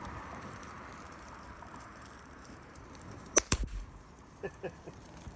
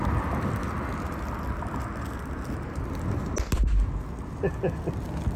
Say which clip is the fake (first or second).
first